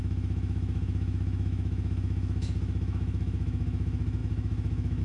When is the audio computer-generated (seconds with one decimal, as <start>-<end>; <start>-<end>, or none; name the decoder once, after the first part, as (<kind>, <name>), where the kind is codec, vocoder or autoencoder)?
0.0-5.0 (autoencoder, DAC-VAE)